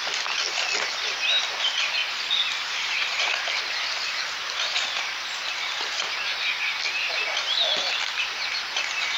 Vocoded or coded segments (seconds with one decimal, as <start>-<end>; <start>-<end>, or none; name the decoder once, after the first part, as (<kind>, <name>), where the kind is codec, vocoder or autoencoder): 2.0-6.6 (vocoder, BigVGAN v2)

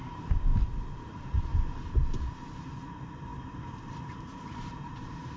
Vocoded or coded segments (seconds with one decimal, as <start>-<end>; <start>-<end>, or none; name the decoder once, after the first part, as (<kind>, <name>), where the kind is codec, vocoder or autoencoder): 0.0-0.5 (vocoder, BigVGAN v2); 1.0-1.5; 2.9-5.4